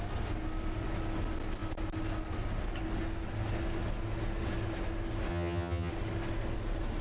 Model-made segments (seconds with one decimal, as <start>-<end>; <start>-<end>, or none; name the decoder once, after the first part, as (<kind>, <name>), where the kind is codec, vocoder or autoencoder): 5.3-5.9 (vocoder, HiFi-GAN)